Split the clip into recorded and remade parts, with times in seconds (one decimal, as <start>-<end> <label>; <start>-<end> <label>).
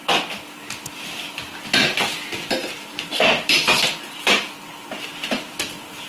0.0-6.1 recorded